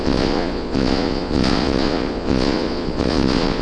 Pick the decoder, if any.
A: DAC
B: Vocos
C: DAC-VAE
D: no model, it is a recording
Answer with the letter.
B